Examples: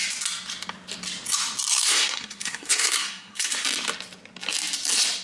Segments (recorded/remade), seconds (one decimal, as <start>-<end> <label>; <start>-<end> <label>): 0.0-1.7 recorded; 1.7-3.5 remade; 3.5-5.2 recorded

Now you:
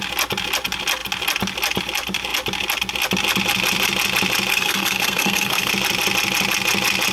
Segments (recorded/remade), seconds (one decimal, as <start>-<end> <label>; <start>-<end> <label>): 0.0-4.5 recorded; 4.5-5.7 remade; 5.7-7.1 recorded

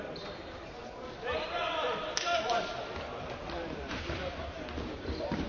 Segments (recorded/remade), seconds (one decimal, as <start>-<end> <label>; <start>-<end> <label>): 0.0-0.8 remade; 0.8-3.2 recorded; 3.2-5.5 remade